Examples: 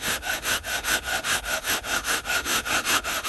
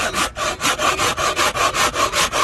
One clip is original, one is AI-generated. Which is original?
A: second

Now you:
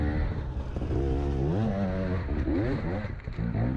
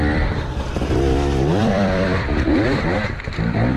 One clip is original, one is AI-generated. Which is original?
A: first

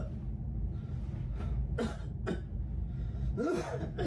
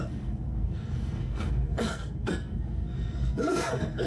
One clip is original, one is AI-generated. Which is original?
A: first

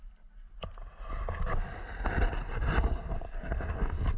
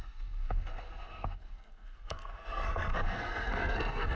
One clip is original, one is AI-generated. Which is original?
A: first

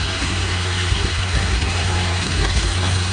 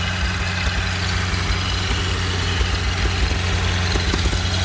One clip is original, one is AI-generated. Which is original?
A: second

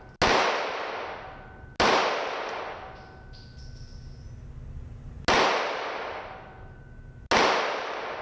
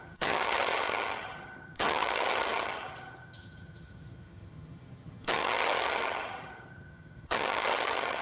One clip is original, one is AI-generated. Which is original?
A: first